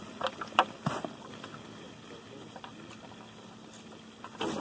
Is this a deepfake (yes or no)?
yes